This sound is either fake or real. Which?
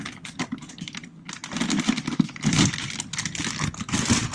real